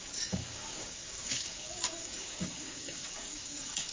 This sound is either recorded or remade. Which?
remade